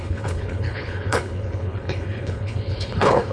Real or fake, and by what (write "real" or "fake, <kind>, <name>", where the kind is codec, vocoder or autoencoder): fake, codec, HILCodec